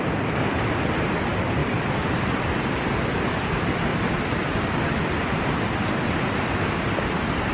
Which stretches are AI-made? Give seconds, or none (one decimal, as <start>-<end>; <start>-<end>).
none